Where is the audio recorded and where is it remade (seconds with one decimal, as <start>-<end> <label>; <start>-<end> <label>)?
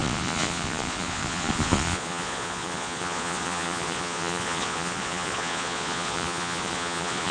0.0-7.3 remade